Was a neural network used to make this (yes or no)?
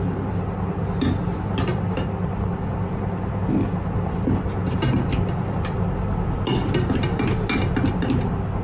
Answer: no